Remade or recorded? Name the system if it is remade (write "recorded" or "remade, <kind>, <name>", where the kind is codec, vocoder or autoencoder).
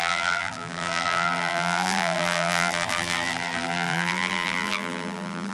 remade, vocoder, BigVGAN v2